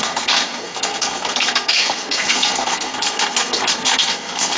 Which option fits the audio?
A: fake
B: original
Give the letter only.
A